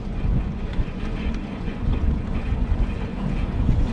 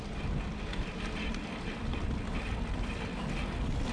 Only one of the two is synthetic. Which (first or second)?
first